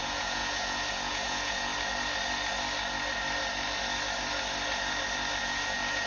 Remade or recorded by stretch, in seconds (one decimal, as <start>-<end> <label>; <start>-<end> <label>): 0.0-1.7 remade; 1.7-5.4 recorded; 5.4-6.1 remade